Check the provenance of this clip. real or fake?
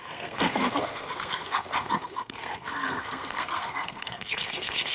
fake